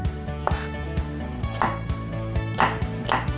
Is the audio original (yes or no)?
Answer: yes